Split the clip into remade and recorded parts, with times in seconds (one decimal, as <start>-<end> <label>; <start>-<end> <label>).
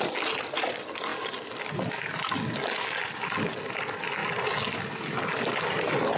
0.0-6.2 recorded